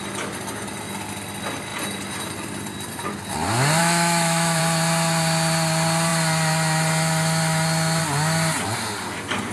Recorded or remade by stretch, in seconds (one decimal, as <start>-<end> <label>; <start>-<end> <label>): 0.0-3.8 recorded; 3.8-4.6 remade; 4.6-9.5 recorded